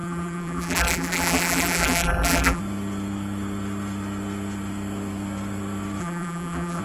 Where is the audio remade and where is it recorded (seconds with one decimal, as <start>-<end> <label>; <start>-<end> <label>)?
0.0-2.6 remade; 2.6-6.0 recorded; 6.0-6.8 remade